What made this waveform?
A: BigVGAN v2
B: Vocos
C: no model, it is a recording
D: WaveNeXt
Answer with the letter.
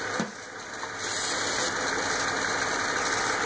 C